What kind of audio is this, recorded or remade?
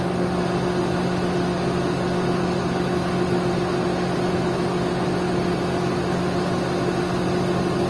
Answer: recorded